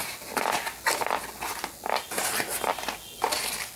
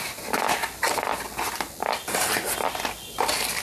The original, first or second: first